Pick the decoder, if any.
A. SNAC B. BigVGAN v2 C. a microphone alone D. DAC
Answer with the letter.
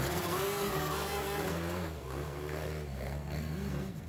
A